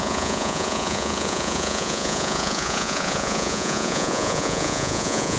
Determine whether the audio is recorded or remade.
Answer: remade